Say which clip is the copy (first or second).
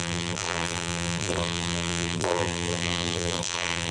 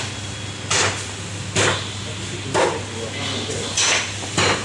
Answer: first